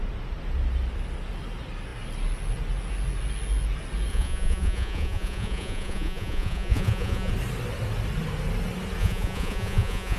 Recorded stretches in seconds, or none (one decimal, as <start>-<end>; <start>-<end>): 0.0-4.1; 7.3-9.0